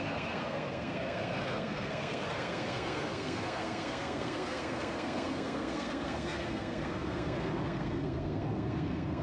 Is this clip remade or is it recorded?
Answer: remade